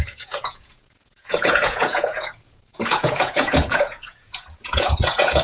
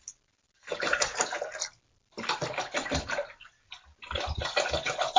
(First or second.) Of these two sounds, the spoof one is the first